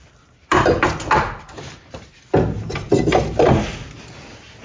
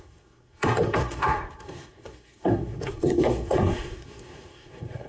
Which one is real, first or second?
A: first